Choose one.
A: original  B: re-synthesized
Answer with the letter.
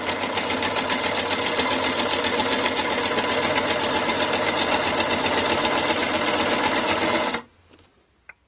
A